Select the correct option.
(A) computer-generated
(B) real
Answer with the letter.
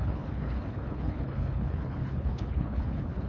A